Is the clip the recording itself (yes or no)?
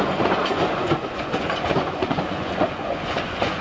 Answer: no